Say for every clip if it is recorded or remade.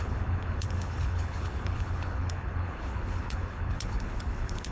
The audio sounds remade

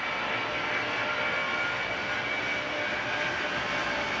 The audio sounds recorded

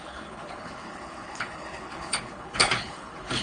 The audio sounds remade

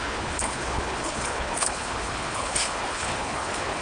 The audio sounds remade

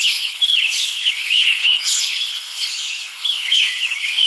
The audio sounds remade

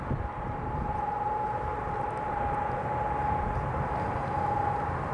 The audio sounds recorded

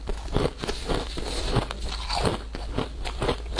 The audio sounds recorded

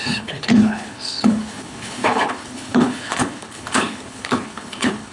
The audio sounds remade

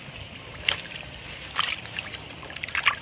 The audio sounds recorded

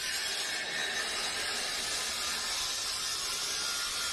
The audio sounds recorded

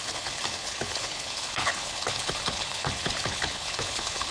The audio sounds remade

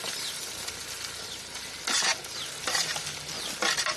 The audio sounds recorded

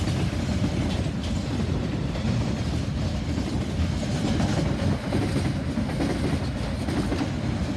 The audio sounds recorded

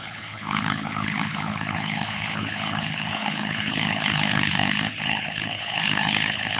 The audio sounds remade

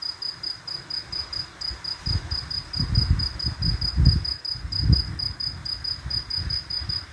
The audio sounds recorded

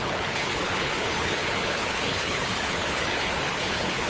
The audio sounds remade